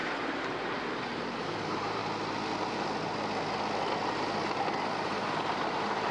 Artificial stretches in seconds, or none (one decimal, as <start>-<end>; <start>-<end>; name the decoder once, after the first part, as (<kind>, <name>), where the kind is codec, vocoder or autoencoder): 0.0-2.0 (vocoder, BigVGAN v2); 4.9-6.1